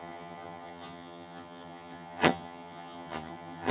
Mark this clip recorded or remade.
remade